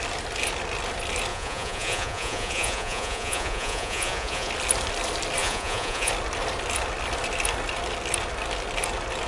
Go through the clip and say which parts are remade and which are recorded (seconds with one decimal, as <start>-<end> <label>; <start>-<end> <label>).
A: 0.0-1.3 recorded; 1.3-4.5 remade; 4.5-5.4 recorded; 5.4-6.1 remade; 6.1-9.3 recorded